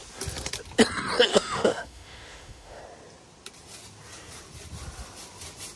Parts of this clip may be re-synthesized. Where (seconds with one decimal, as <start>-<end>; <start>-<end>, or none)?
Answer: 1.3-2.8